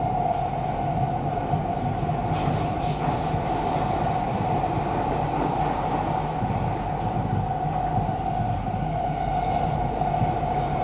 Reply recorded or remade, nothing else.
recorded